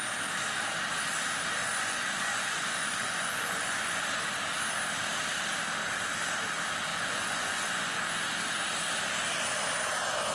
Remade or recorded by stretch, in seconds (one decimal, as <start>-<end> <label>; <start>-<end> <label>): 0.0-1.6 recorded; 1.6-4.0 remade; 4.0-6.9 recorded; 6.9-8.0 remade; 8.0-10.3 recorded